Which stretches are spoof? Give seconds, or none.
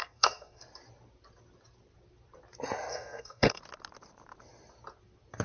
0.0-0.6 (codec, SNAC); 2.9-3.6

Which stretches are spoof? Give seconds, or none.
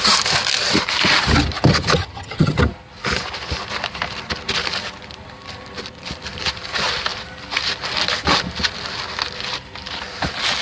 2.0-2.6 (vocoder, HiFi-GAN)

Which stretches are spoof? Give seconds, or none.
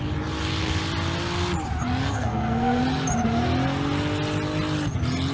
2.0-2.8 (codec, SNAC)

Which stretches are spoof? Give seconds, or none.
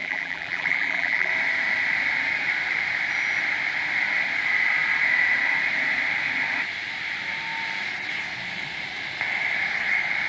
0.0-1.3 (vocoder, BigVGAN v2)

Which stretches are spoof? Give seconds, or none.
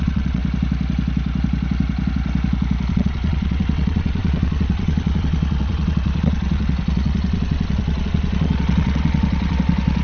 0.0-0.4 (vocoder, WaveNeXt); 2.9-10.0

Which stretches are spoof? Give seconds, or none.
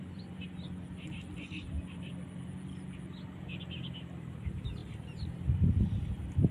none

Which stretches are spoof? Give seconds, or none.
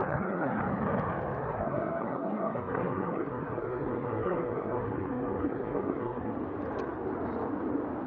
0.0-0.6 (codec, SNAC); 1.4-6.3